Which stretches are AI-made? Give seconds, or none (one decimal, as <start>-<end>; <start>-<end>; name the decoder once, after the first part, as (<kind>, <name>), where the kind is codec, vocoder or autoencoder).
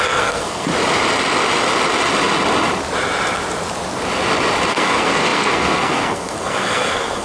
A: 0.0-0.7 (codec, SNAC); 4.7-7.2